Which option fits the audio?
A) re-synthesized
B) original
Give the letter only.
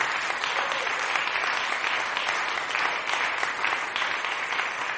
B